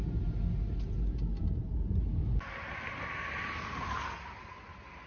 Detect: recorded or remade recorded